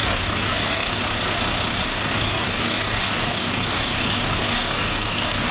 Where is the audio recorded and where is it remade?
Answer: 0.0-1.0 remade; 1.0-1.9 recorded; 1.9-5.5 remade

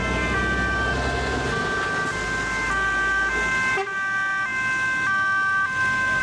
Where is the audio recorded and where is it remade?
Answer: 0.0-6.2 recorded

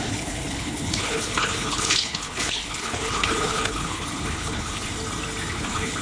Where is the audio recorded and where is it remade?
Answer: 0.0-4.9 remade; 4.9-5.5 recorded; 5.5-6.0 remade